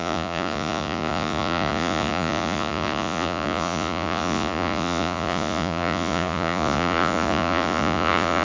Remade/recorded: remade